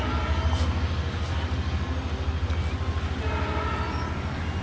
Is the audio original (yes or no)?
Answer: yes